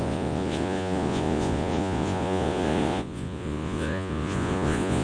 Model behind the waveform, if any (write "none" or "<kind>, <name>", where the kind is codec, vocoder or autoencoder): vocoder, Vocos